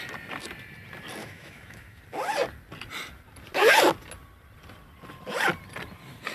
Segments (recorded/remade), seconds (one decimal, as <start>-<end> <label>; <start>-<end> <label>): 0.0-1.2 recorded; 1.2-2.0 remade; 2.0-6.3 recorded